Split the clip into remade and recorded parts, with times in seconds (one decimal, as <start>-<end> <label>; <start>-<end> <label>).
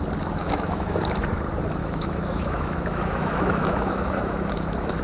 0.0-0.4 recorded; 0.4-1.0 remade; 1.0-1.8 recorded; 1.8-5.0 remade